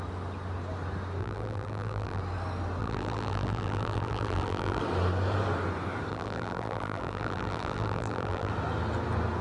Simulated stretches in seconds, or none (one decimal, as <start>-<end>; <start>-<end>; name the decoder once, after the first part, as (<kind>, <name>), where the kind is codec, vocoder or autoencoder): 1.2-2.2 (vocoder, BigVGAN v2); 2.8-4.8; 6.1-8.5